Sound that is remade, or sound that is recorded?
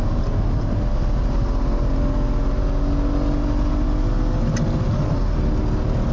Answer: recorded